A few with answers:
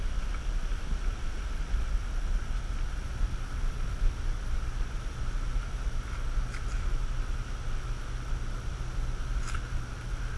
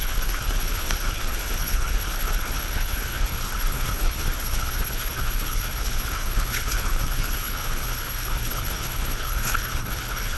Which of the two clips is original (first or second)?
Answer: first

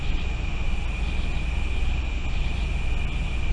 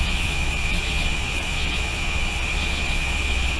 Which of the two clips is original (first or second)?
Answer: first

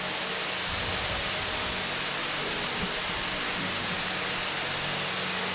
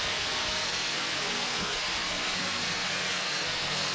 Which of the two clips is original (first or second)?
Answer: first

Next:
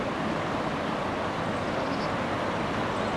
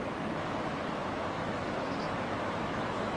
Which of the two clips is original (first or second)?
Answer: first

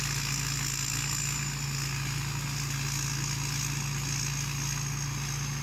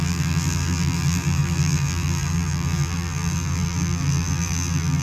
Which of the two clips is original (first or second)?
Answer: first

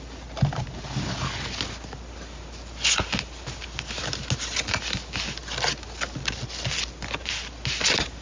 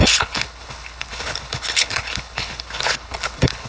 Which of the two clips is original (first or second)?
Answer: first